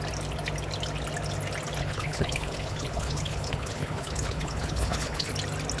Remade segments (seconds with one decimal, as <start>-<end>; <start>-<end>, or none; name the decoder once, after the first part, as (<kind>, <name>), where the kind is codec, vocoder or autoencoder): 1.8-5.3 (codec, HILCodec)